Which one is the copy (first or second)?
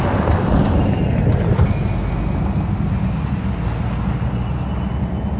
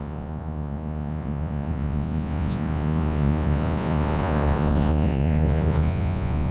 second